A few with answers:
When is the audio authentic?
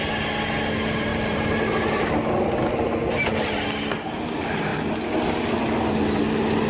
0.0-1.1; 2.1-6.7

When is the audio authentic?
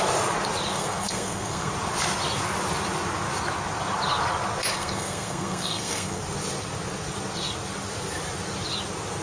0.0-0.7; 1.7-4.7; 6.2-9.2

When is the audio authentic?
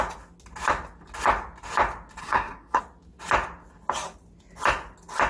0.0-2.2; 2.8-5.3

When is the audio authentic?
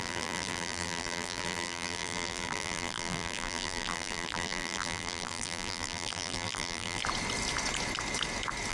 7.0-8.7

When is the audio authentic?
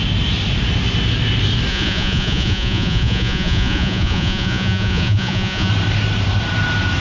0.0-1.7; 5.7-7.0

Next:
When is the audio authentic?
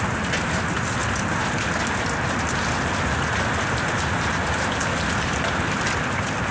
0.0-6.5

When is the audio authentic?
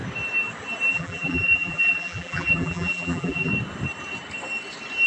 0.0-0.9; 3.5-5.1